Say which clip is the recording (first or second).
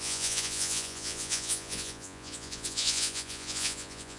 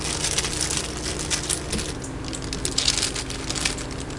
second